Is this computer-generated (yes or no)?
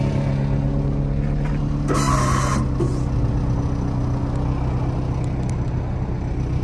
no